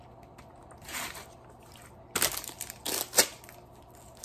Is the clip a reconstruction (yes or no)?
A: no